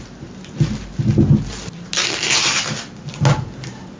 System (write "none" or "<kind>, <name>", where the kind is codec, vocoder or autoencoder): none